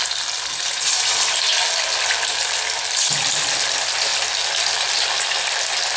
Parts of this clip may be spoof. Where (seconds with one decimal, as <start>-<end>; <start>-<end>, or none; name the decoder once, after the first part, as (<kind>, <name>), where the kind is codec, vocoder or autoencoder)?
none